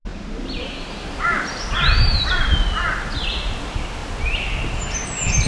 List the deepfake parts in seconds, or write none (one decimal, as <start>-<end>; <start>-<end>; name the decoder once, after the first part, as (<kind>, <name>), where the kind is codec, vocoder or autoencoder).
none